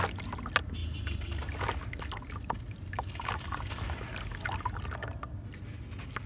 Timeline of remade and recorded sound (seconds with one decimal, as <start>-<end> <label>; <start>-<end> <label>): 0.0-6.3 recorded